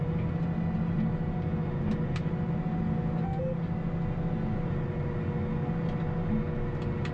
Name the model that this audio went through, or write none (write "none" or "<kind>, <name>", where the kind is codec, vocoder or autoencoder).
none